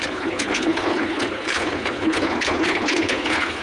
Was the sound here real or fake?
fake